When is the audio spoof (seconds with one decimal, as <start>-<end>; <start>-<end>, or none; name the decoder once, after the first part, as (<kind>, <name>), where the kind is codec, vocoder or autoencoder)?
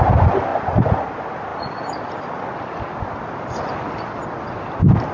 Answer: none